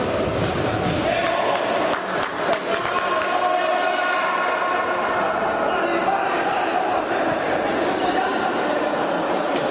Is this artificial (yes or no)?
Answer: no